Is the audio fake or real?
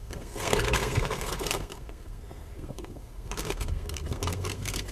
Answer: fake